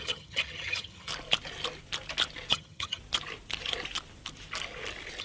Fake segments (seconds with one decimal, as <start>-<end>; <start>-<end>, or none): 0.0-1.1; 2.5-3.0